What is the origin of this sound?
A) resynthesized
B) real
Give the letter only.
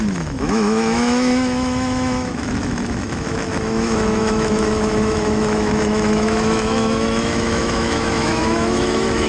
A